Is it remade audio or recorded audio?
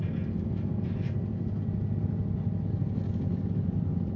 recorded